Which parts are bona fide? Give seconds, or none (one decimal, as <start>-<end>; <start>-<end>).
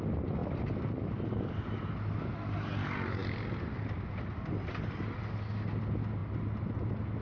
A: 0.0-7.2